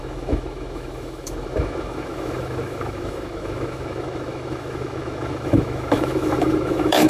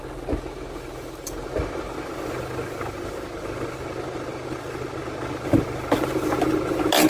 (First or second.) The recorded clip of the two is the second